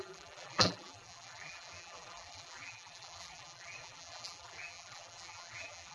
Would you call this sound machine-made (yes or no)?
yes